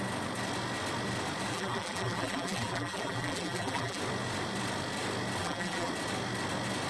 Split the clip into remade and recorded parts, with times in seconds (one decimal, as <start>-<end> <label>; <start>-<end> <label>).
0.0-1.5 recorded; 1.5-4.0 remade; 4.0-5.4 recorded; 5.4-5.9 remade; 5.9-6.9 recorded